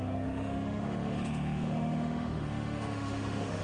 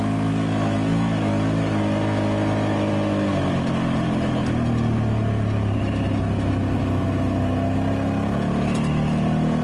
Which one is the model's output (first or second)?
first